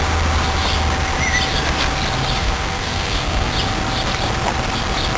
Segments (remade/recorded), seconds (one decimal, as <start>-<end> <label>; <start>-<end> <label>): 0.0-2.4 recorded; 2.4-3.5 remade; 3.5-5.2 recorded